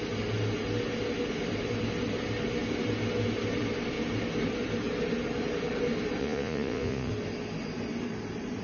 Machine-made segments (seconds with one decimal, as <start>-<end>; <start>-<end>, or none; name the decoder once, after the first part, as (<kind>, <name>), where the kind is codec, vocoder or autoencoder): 6.2-7.1 (vocoder, Vocos)